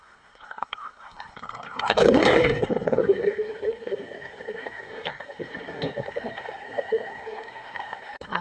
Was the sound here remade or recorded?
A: remade